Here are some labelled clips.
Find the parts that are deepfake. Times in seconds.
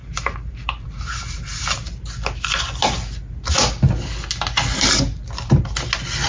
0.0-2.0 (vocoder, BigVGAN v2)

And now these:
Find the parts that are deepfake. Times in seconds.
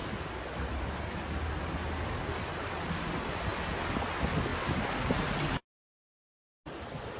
4.5-5.0 (vocoder, BigVGAN v2)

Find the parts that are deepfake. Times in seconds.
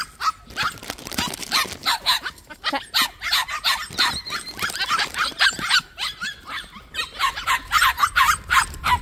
4.9-9.0 (vocoder, BigVGAN v2)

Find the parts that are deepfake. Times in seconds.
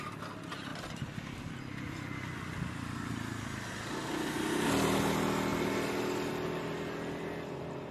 0.7-1.6 (vocoder, BigVGAN v2)